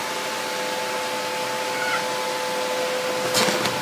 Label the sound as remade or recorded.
recorded